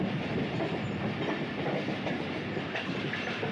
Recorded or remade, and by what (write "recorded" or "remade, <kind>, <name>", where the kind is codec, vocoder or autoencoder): recorded